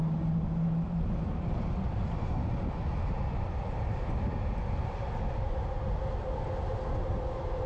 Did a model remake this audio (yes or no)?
no